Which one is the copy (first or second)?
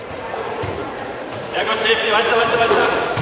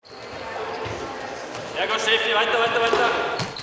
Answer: first